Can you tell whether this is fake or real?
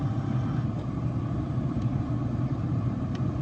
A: fake